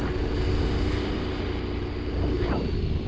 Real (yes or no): yes